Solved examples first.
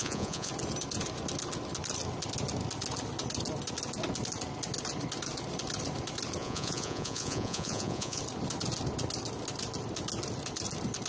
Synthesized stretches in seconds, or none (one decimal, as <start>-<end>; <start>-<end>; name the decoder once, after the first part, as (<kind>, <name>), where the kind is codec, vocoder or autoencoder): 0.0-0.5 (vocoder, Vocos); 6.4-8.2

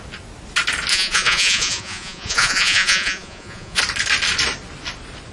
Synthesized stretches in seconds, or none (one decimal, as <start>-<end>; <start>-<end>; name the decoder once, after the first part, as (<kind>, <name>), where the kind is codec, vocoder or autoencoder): 0.9-3.8 (vocoder, Vocos)

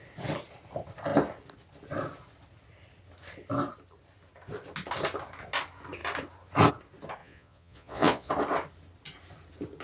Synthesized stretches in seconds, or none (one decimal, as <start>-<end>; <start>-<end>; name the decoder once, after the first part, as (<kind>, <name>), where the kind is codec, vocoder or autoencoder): 7.2-8.3 (vocoder, Vocos)

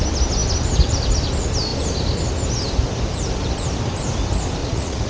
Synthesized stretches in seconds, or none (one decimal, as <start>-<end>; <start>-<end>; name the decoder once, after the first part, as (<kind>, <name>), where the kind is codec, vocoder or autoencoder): 4.6-5.1 (vocoder, Vocos)

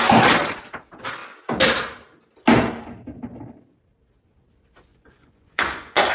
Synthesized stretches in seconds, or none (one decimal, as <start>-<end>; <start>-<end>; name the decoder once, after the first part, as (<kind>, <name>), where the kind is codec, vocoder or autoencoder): 4.9-6.1 (vocoder, Vocos)